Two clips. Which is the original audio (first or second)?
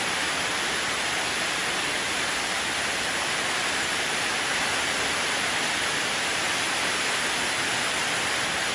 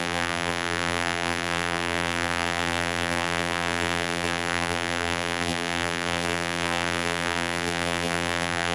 first